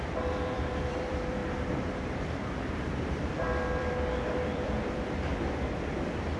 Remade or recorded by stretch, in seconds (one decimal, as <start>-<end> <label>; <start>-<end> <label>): 0.0-1.4 remade; 1.4-3.1 recorded; 3.1-6.4 remade